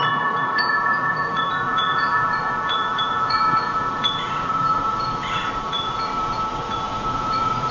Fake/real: fake